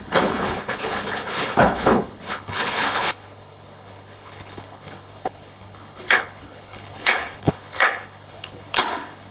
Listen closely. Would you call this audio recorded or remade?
remade